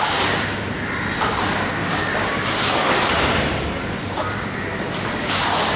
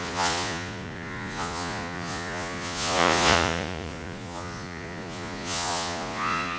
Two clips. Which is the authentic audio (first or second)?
first